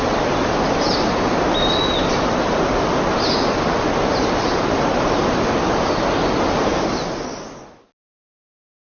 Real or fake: real